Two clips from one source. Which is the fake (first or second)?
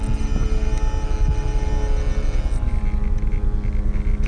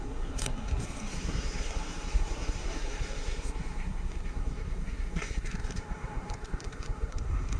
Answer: second